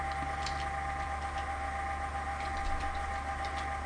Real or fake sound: real